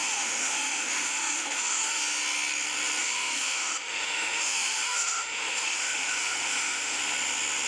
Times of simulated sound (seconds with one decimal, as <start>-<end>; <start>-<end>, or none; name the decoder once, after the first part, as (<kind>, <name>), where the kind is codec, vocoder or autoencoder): 0.0-2.0 (autoencoder, DAC-VAE); 3.0-7.0